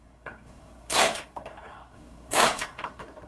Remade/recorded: remade